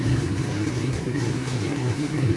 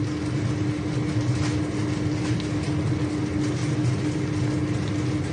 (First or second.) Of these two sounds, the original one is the second